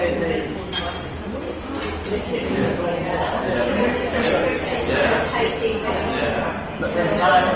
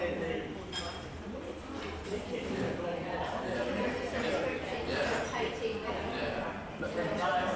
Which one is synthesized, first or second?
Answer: second